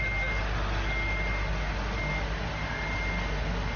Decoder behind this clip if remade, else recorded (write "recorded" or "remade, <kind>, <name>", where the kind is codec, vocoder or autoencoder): recorded